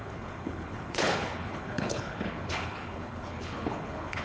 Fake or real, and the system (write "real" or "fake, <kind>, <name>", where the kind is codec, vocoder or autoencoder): fake, codec, HILCodec